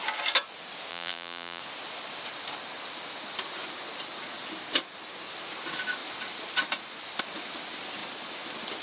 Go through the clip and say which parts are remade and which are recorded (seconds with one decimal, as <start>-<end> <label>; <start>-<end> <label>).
0.0-0.9 recorded; 0.9-1.6 remade; 1.6-8.8 recorded